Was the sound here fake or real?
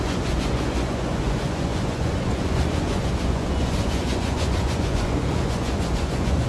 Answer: fake